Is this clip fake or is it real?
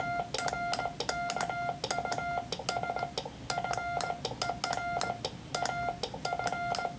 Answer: real